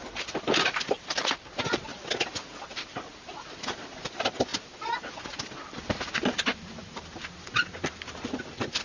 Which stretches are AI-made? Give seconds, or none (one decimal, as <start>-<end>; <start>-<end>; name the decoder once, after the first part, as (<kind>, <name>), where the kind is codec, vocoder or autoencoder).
none